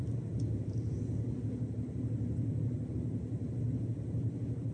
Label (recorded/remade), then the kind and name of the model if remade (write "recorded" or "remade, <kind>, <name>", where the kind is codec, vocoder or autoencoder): recorded